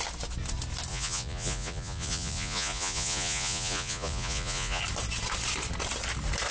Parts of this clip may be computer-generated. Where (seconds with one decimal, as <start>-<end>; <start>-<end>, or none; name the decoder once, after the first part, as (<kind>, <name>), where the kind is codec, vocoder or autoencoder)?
0.9-4.8 (vocoder, Vocos)